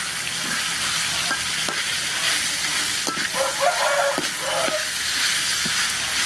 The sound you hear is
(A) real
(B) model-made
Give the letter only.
A